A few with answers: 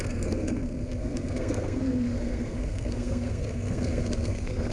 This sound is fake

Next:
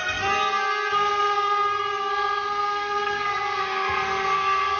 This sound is fake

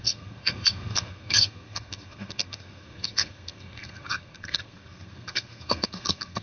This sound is fake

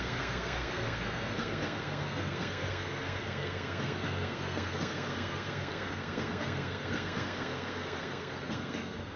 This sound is fake